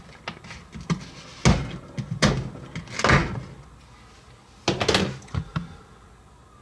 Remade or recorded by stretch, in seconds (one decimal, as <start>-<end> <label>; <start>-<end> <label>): 0.0-6.6 recorded